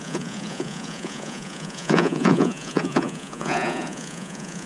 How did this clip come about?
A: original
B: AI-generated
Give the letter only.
B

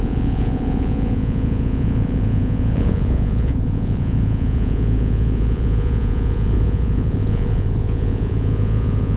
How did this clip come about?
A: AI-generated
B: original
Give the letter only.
A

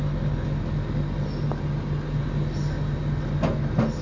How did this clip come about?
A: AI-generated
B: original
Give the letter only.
B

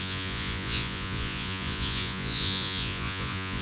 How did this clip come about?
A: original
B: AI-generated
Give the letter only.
B